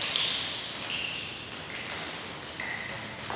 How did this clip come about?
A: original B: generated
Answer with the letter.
A